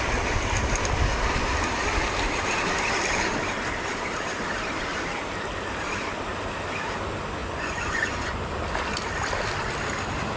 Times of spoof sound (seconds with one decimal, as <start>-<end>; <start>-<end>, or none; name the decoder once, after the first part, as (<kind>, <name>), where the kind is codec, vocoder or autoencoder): 7.4-8.4 (vocoder, Vocos)